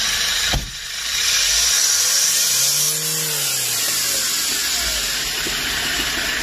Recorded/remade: recorded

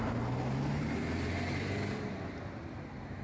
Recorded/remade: recorded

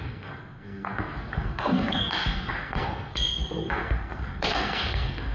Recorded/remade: remade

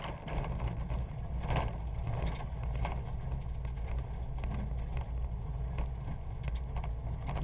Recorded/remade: recorded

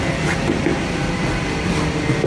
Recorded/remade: recorded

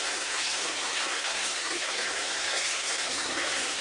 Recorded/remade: remade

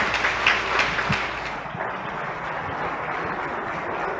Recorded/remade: recorded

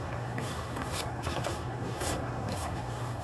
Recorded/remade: remade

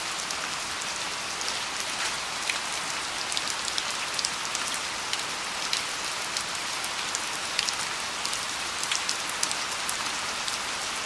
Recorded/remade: recorded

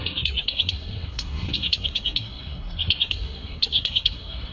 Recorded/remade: remade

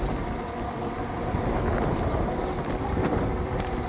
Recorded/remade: recorded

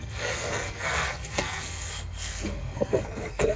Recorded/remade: remade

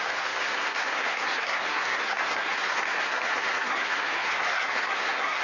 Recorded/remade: remade